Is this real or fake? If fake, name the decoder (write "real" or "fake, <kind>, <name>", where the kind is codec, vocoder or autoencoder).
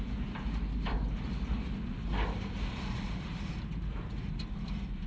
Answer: real